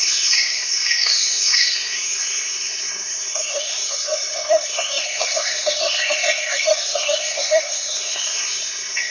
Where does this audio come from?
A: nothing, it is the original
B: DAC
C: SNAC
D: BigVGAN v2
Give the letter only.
C